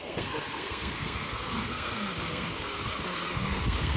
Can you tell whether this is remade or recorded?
remade